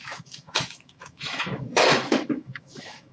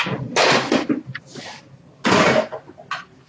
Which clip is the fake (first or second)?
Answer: first